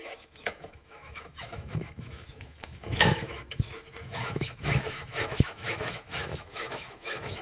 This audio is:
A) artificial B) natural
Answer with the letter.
A